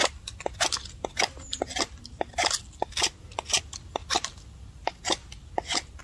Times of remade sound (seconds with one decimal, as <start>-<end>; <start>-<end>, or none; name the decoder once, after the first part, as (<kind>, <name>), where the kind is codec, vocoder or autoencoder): none